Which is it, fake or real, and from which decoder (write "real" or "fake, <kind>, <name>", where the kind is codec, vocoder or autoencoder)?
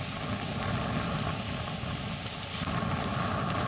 real